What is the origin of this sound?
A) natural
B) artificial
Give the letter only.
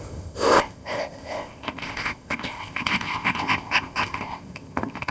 B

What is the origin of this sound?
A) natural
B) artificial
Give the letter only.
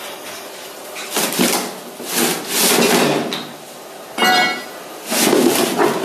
A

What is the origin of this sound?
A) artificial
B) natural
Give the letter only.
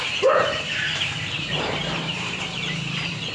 A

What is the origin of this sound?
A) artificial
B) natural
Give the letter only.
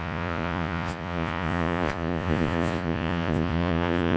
A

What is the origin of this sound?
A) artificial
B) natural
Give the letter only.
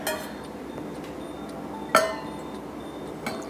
B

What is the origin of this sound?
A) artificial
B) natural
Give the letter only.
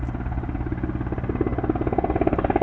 B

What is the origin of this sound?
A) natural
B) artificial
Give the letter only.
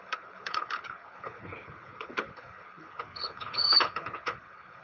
B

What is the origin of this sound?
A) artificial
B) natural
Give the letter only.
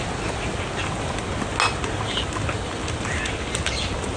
B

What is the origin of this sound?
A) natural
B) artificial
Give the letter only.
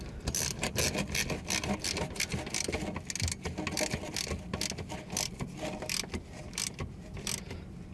A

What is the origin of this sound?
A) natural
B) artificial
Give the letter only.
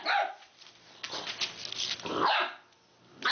A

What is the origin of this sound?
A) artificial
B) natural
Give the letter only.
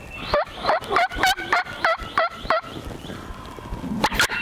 B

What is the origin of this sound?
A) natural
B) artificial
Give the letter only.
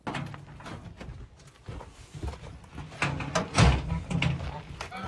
A